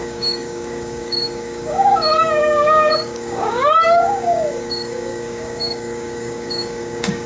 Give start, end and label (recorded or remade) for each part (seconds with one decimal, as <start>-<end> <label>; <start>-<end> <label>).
0.0-7.3 remade